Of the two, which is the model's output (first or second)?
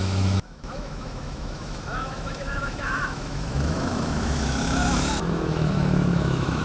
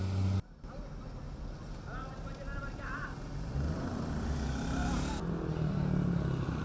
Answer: first